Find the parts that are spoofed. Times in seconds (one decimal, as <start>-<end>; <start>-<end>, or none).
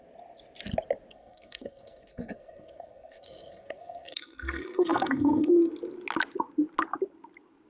1.1-5.7